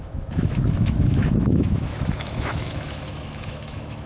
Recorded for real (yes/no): no